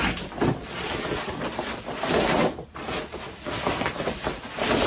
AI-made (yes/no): no